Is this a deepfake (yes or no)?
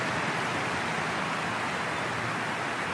no